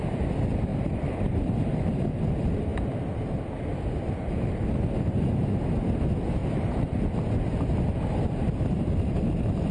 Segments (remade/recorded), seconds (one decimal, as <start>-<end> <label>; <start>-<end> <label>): 0.0-9.7 recorded